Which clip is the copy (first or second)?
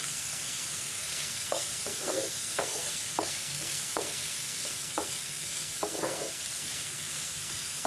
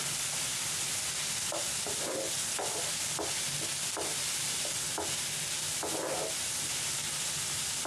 first